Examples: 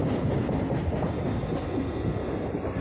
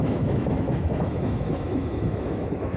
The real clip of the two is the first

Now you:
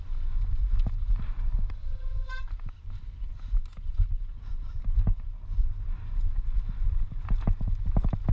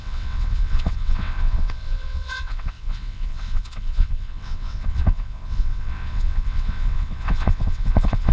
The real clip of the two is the first